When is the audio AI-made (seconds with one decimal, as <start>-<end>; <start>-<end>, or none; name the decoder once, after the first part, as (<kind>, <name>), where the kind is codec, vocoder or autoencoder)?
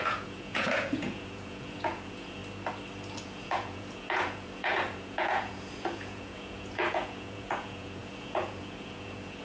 0.0-2.4 (vocoder, Vocos); 3.2-9.4